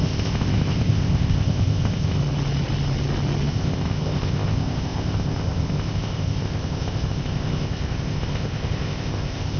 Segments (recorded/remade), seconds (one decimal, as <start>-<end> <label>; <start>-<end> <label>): 0.0-2.2 remade; 2.2-3.5 recorded; 3.5-9.6 remade